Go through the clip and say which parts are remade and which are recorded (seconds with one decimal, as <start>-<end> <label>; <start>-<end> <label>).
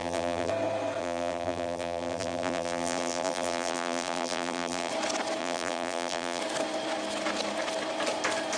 0.0-0.5 remade; 0.5-1.0 recorded; 1.0-4.9 remade; 4.9-5.4 recorded; 5.4-6.4 remade; 6.4-8.6 recorded